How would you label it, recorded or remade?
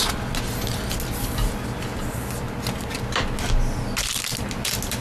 recorded